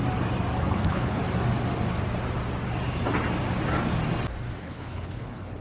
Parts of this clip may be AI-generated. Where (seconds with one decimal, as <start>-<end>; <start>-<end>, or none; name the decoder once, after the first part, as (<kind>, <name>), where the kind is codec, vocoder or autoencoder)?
0.6-1.2 (codec, HILCodec); 4.6-5.6